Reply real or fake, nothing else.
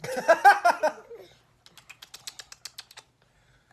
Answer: real